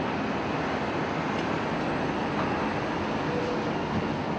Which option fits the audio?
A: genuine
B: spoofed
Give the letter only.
A